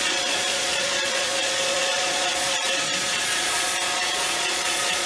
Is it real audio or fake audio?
fake